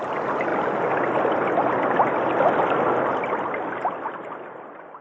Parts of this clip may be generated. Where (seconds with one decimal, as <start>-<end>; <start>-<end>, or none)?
none